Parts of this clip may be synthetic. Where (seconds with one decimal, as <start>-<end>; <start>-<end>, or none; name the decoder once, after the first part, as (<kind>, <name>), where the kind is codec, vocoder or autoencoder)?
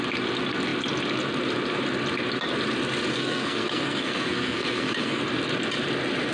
3.1-5.2 (codec, SNAC)